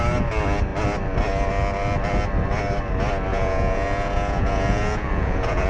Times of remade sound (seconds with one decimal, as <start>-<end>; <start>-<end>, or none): 3.3-5.7